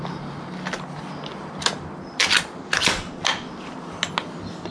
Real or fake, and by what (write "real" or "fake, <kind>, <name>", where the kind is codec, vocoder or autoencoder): real